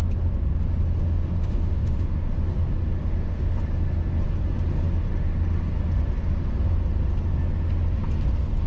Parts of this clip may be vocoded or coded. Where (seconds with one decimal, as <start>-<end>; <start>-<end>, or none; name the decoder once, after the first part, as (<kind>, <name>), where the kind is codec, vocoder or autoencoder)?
1.0-2.3 (autoencoder, DAC-VAE); 3.0-3.6